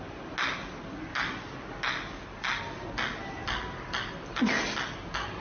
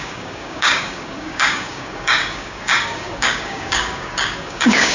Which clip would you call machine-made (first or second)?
second